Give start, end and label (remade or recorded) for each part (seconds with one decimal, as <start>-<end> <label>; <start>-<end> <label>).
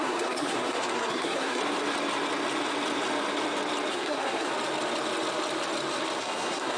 0.0-1.6 remade; 1.6-3.9 recorded; 3.9-4.5 remade; 4.5-6.2 recorded; 6.2-6.8 remade